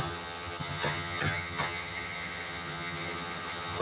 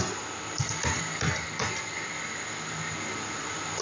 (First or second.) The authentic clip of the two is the second